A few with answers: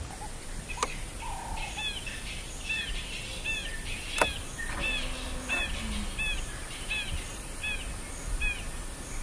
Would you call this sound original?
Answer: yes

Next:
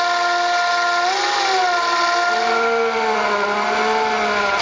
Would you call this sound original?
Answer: yes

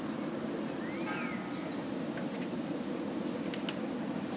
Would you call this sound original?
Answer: yes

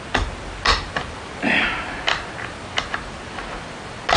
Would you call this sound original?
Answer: yes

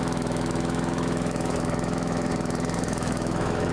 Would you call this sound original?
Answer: no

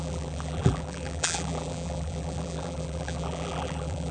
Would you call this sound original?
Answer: no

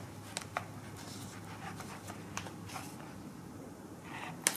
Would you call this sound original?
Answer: yes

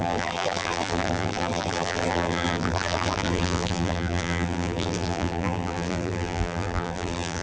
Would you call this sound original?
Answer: no